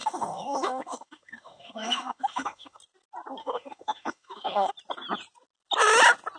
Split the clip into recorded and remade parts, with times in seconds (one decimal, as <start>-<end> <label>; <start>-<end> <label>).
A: 0.0-2.8 remade; 2.8-3.4 recorded; 3.4-4.7 remade; 4.7-6.4 recorded